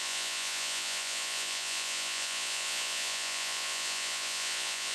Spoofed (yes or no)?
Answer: yes